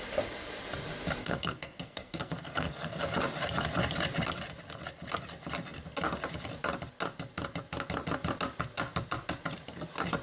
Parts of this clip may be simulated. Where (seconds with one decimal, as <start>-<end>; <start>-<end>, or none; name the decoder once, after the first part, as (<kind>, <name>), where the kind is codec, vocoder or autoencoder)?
1.2-3.0 (codec, SNAC)